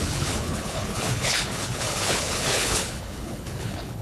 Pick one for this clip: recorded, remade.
remade